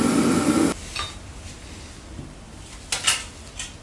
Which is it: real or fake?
real